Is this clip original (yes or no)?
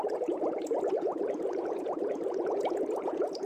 no